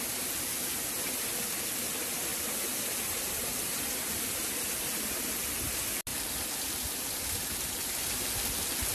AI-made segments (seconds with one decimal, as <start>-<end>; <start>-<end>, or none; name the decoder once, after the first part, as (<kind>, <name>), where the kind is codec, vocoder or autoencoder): 2.3-5.2 (vocoder, BigVGAN v2); 6.1-8.0